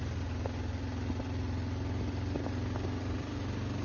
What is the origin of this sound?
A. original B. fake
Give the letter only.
A